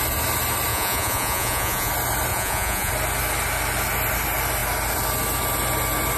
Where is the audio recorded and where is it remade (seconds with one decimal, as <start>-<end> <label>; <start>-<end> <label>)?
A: 0.0-0.7 recorded; 0.7-1.9 remade; 1.9-2.3 recorded; 2.3-2.9 remade; 2.9-6.2 recorded